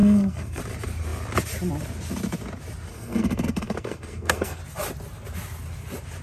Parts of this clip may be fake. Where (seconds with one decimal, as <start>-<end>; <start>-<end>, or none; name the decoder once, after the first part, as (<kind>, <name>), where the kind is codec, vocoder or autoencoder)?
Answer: 0.0-0.6 (codec, SNAC); 2.9-4.6